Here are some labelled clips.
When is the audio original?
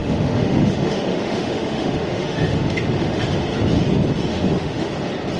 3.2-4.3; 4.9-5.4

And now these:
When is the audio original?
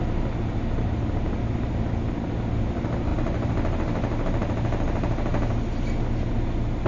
0.0-6.9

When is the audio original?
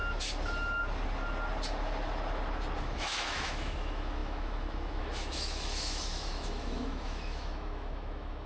0.0-2.8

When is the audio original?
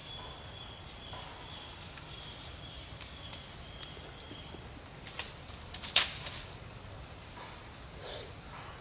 3.2-8.8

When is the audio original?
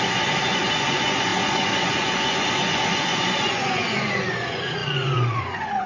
none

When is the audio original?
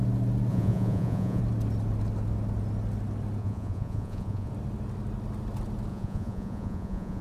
0.0-0.5; 1.4-3.4; 4.5-5.9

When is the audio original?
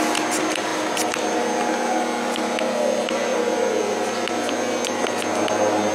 0.0-5.9